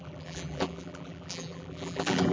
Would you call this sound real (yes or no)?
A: no